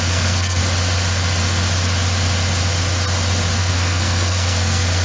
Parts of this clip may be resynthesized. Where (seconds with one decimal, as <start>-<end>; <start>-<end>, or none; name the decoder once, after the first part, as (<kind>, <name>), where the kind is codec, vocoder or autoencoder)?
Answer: 0.0-0.6 (codec, SNAC); 3.6-5.0